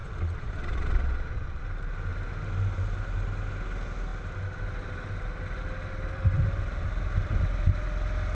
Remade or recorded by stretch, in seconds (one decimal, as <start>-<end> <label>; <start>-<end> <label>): 0.0-1.6 remade; 1.6-8.3 recorded